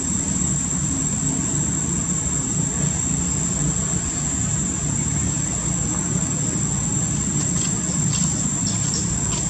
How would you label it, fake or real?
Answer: real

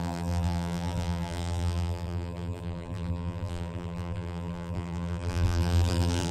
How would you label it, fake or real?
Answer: fake